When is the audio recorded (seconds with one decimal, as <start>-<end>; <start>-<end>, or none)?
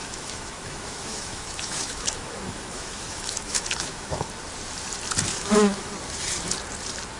4.3-5.3; 5.9-7.2